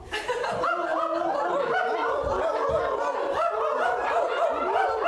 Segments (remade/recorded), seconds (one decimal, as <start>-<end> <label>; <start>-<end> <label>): 0.0-5.1 recorded